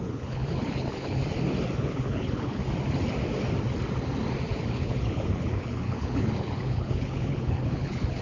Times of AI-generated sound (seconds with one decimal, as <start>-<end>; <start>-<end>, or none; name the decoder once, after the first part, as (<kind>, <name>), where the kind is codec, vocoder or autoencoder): 0.0-1.2 (codec, HILCodec); 1.8-2.6; 4.6-8.2